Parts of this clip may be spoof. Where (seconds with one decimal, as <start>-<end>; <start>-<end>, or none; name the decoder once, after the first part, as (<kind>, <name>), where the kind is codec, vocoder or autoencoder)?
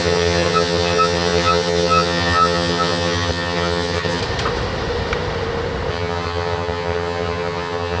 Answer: 0.0-4.2 (vocoder, HiFi-GAN); 5.9-8.0